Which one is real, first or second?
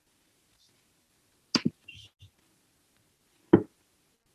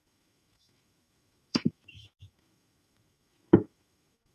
first